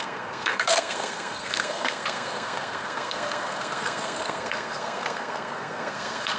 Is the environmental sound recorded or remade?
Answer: remade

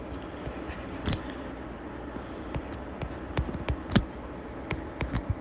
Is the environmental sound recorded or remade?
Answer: recorded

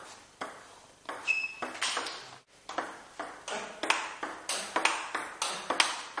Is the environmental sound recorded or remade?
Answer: recorded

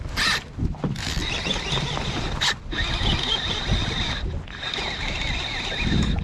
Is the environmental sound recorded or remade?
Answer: recorded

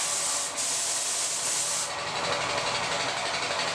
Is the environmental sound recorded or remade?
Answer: recorded